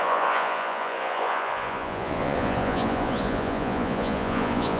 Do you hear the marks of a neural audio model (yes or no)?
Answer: yes